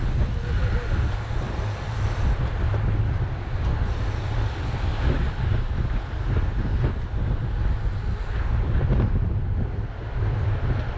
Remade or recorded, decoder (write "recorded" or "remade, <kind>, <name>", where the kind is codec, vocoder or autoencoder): recorded